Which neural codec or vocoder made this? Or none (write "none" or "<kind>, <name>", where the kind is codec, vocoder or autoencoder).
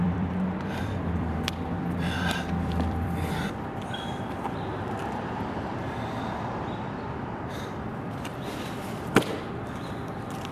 vocoder, BigVGAN v2